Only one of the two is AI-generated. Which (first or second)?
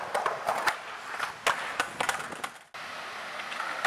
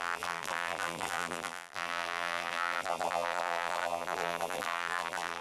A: second